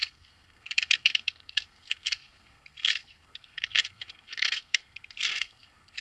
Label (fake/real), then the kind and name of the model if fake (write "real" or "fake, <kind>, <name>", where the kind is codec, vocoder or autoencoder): fake, codec, SNAC